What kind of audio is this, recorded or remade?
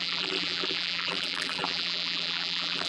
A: remade